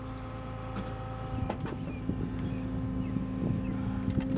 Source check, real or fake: real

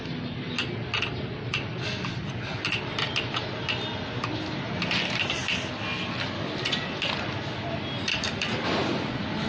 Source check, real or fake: real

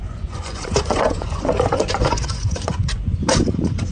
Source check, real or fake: fake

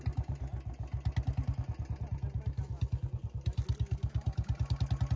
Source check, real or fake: real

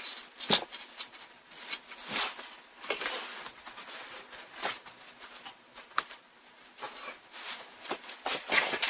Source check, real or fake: real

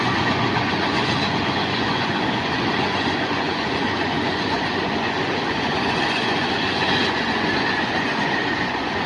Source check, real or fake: fake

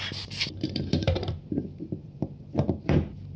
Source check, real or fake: fake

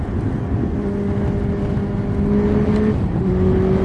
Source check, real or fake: real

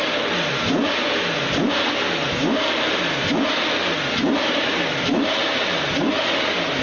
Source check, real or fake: real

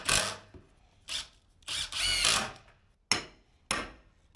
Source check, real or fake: real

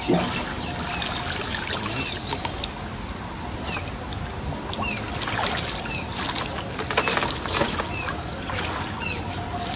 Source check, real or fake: real